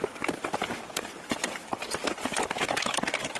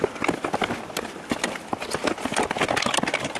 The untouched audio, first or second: second